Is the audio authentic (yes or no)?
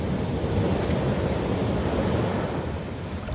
yes